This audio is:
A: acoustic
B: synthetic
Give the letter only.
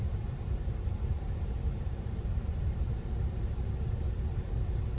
B